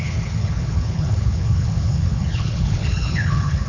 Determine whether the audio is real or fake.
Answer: fake